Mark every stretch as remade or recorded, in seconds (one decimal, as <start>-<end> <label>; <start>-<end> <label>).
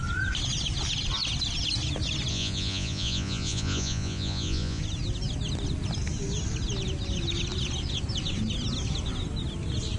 0.0-2.3 recorded; 2.3-4.8 remade; 4.8-10.0 recorded